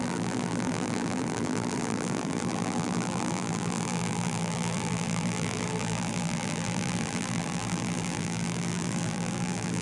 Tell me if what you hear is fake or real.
fake